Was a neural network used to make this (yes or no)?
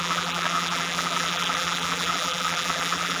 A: yes